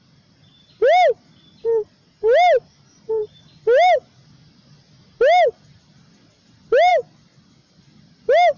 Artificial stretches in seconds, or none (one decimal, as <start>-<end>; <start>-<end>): none